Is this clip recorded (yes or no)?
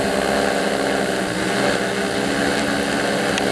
yes